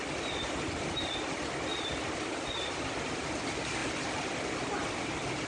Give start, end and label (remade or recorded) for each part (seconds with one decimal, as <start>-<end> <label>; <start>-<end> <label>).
0.0-3.8 recorded; 3.8-4.3 remade; 4.3-5.5 recorded

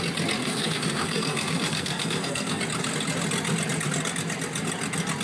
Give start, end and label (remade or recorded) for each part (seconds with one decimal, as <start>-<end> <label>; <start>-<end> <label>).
0.0-0.4 recorded; 0.4-2.6 remade; 2.6-5.2 recorded